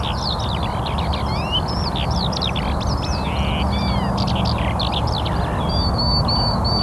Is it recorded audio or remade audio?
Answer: recorded